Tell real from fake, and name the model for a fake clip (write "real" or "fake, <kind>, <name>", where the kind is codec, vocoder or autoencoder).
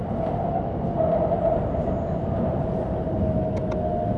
real